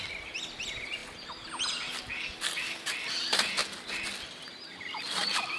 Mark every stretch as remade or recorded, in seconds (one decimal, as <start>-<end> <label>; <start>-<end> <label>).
0.0-3.6 remade; 3.6-4.3 recorded; 4.3-5.6 remade

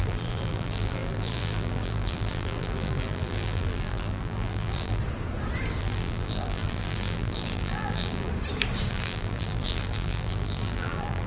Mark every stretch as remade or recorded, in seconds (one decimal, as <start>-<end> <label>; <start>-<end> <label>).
0.0-5.0 remade; 5.0-5.8 recorded; 5.8-8.3 remade; 8.3-8.9 recorded; 8.9-11.3 remade